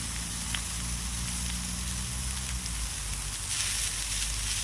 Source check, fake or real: real